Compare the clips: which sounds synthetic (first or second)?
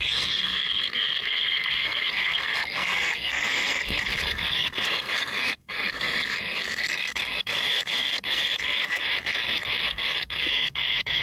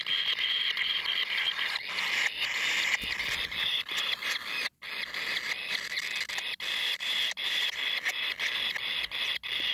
first